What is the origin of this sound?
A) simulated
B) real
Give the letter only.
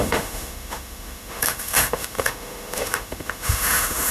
A